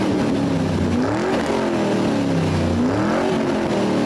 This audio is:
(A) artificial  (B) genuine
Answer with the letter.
B